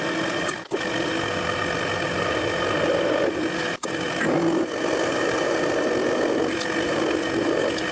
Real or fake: real